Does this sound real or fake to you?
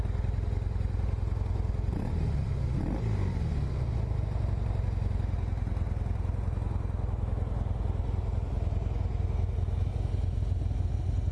real